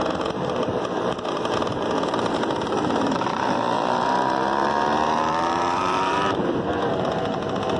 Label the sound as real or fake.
fake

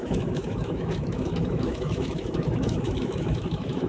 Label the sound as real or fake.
fake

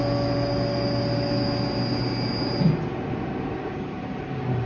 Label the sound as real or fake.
real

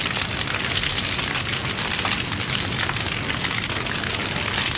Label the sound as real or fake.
real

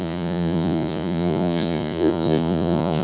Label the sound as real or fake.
fake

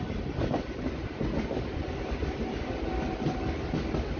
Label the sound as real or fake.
real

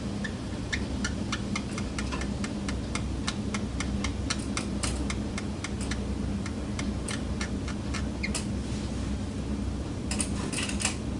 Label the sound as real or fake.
real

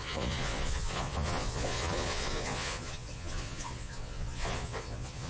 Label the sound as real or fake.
fake